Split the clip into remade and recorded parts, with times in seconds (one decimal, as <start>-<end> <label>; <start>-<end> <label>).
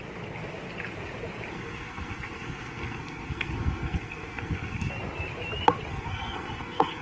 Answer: 0.0-1.5 recorded; 1.5-4.9 remade; 4.9-5.9 recorded; 5.9-7.0 remade